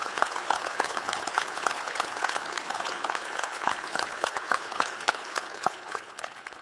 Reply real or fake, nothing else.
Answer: fake